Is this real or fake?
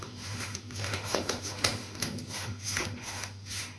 fake